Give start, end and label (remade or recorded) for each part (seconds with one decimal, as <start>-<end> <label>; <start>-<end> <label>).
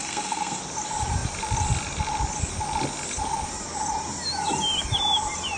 0.0-0.6 remade; 0.6-5.6 recorded